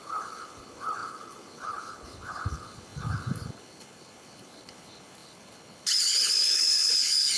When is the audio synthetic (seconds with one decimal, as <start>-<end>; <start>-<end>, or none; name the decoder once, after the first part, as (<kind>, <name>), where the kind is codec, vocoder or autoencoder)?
0.0-7.4 (codec, HILCodec)